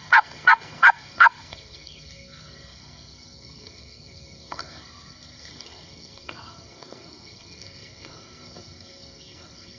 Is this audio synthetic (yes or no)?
yes